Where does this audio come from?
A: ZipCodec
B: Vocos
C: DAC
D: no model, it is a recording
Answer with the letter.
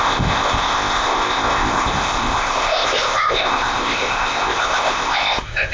A